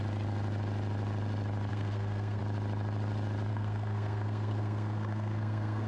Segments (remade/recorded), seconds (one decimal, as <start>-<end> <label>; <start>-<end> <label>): 0.0-1.7 recorded; 1.7-2.4 remade; 2.4-3.5 recorded; 3.5-5.9 remade